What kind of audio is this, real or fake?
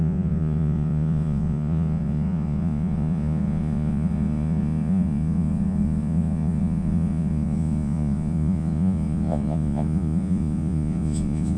fake